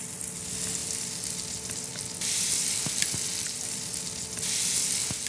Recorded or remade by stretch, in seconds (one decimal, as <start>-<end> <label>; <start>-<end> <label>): 0.0-0.8 recorded; 0.8-4.0 remade; 4.0-5.3 recorded